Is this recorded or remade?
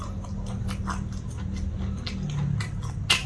recorded